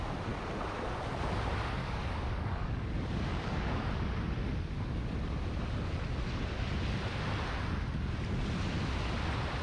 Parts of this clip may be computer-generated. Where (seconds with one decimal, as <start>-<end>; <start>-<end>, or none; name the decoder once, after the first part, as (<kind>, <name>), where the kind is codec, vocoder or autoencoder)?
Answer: 1.8-2.9 (codec, DAC); 3.3-3.9